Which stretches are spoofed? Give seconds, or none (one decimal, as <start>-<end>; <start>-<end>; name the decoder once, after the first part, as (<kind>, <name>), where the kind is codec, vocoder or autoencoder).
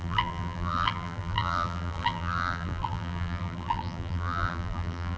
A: 0.0-5.2 (vocoder, BigVGAN v2)